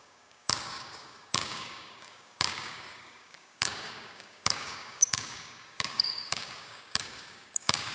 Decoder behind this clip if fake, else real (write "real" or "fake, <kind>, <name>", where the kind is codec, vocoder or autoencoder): fake, codec, DAC